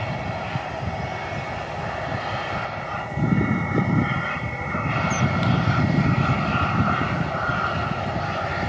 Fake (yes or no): no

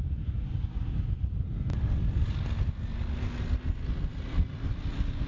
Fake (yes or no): no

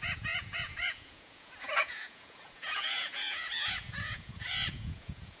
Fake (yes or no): yes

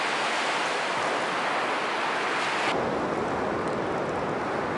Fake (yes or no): no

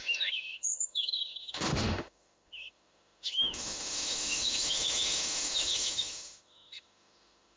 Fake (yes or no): yes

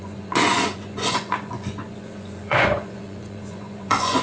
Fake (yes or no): yes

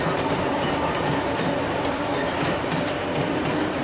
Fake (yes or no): no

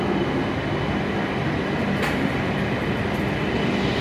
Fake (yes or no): no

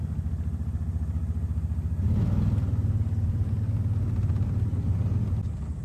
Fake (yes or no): no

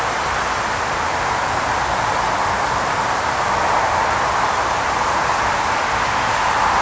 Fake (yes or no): no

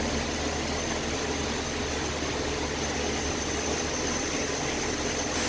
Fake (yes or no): no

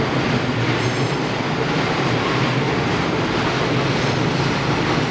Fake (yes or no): no